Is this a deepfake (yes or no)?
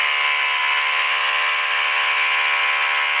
no